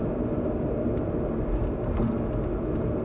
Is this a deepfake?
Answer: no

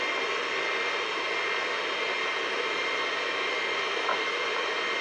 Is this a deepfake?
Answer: no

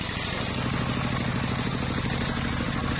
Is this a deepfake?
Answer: no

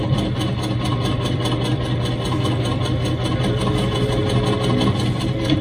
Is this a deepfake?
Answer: no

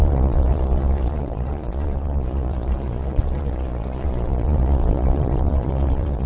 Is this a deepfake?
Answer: yes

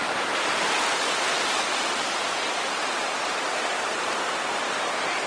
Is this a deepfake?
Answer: yes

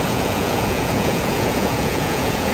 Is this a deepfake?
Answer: yes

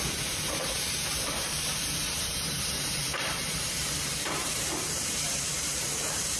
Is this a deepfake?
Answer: yes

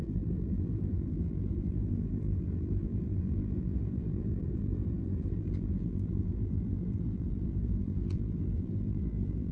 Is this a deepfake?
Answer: yes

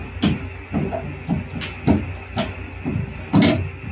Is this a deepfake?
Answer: no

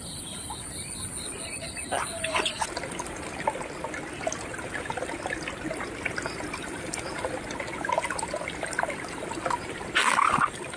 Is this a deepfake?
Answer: no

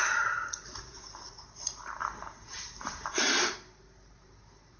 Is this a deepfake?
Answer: yes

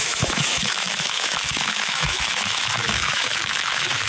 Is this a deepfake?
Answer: yes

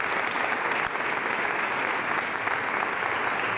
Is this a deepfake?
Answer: no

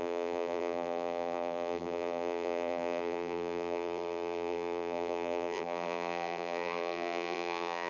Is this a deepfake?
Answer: yes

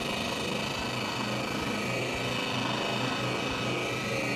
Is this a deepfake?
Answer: no